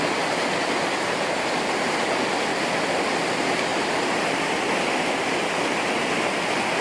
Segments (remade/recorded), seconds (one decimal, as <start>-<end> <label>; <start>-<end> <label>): 0.0-6.8 recorded